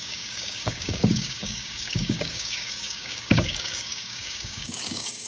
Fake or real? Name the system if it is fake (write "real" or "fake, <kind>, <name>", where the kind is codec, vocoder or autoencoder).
fake, codec, DAC